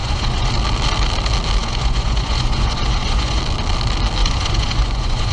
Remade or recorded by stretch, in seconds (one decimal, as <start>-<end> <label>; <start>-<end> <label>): 0.0-0.5 remade; 0.5-1.6 recorded; 1.6-3.4 remade; 3.4-4.2 recorded; 4.2-5.3 remade